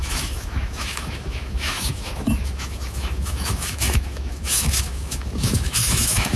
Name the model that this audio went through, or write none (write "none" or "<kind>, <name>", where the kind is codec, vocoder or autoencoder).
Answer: autoencoder, DAC-VAE